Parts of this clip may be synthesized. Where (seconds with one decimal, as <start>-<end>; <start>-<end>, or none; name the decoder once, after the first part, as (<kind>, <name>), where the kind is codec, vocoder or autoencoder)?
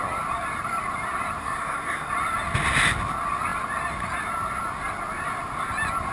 1.4-2.1 (codec, SNAC)